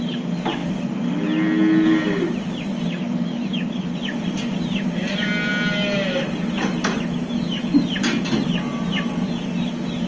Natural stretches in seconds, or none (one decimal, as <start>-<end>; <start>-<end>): 0.0-10.1